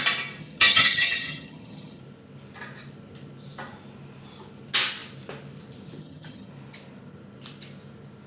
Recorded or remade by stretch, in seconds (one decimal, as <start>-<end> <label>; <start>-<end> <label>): 0.0-0.4 recorded; 0.4-2.0 remade; 2.0-6.0 recorded; 6.0-6.5 remade; 6.5-8.3 recorded